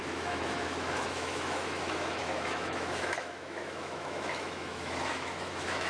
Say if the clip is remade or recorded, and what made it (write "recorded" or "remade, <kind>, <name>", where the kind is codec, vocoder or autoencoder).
remade, autoencoder, DAC-VAE